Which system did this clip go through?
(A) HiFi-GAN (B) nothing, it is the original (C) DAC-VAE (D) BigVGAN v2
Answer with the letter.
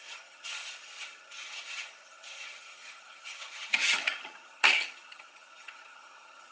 A